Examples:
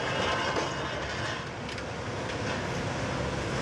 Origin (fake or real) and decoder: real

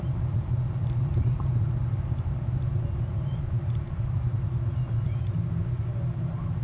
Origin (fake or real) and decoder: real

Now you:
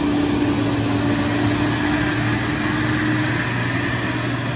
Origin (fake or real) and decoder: real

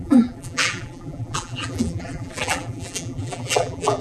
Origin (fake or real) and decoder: fake, vocoder, BigVGAN v2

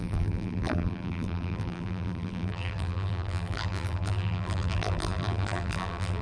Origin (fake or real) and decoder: fake, vocoder, BigVGAN v2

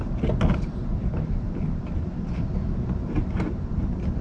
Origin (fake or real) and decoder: real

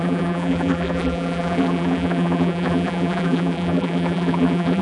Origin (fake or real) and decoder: fake, vocoder, BigVGAN v2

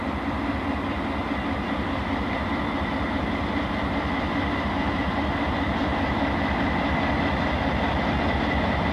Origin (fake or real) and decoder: real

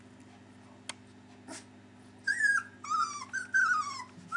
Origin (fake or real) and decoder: real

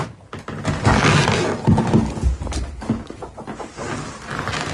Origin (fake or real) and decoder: real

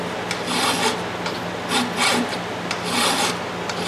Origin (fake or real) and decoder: real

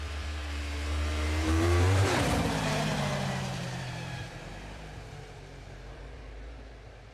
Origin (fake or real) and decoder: fake, vocoder, BigVGAN v2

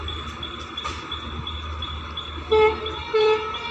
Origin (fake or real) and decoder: fake, vocoder, BigVGAN v2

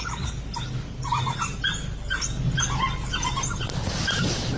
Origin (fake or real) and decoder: real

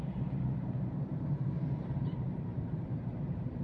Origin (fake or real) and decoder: fake, vocoder, BigVGAN v2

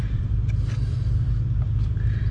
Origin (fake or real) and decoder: real